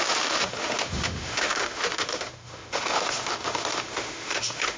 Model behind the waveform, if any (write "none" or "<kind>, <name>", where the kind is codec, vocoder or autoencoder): autoencoder, DAC-VAE